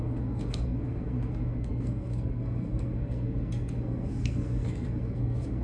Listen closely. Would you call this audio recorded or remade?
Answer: remade